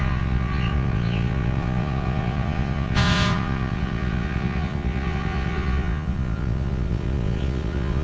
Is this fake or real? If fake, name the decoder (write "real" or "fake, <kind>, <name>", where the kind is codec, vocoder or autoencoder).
fake, vocoder, Vocos